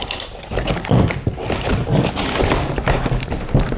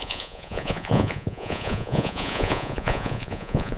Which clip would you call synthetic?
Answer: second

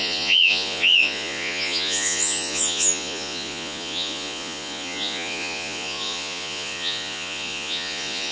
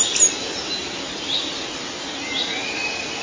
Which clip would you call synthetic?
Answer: first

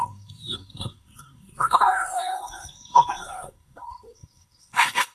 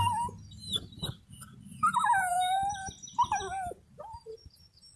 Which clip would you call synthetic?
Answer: first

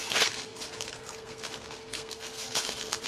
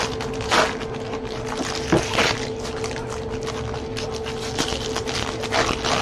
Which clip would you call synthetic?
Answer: first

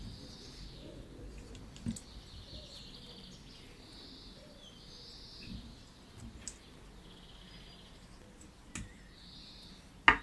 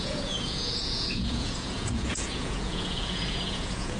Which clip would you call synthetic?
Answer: second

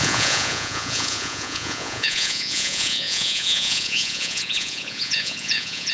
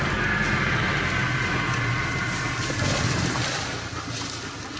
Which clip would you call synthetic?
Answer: first